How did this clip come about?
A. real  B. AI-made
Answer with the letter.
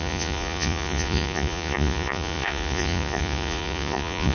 B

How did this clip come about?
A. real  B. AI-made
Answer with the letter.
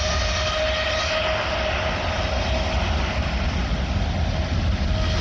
A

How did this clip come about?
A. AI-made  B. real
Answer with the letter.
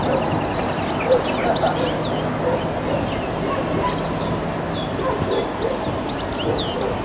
B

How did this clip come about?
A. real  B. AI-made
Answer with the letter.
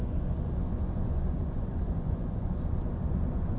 B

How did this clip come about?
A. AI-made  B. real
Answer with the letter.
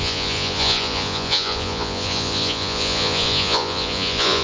A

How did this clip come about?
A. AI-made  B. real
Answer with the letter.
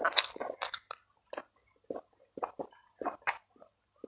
B